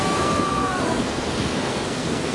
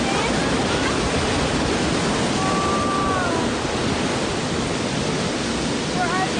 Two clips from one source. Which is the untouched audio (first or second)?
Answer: second